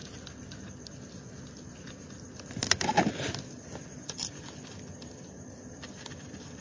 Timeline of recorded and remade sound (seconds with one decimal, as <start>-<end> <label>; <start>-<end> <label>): 0.0-6.6 recorded